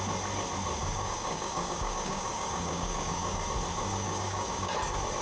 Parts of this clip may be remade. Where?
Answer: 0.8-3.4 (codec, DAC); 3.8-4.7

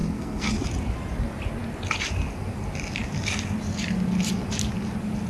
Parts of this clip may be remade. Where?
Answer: 0.0-0.5 (codec, SNAC)

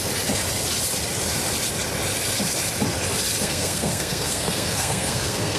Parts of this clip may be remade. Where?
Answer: 3.4-5.6 (codec, SNAC)

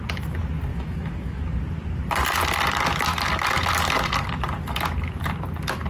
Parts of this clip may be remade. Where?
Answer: 0.7-1.4 (autoencoder, DAC-VAE)

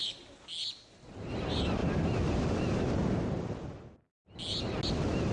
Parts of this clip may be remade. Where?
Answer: none